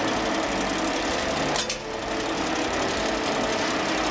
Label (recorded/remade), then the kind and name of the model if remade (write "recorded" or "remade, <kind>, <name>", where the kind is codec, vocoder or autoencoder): recorded